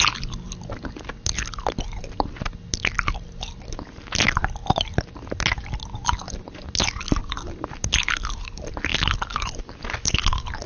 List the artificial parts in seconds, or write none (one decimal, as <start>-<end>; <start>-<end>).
none

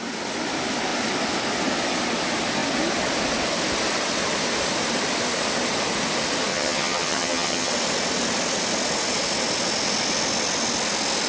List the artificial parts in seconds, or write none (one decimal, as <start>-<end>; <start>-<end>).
6.5-7.7